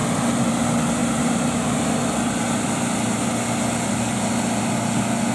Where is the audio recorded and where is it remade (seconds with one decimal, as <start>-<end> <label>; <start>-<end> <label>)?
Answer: 0.0-1.0 recorded; 1.0-1.6 remade; 1.6-5.3 recorded